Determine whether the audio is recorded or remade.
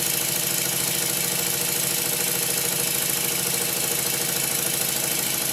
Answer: recorded